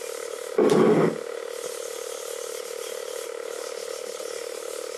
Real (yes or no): yes